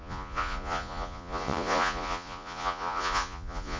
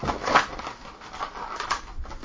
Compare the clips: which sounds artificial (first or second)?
first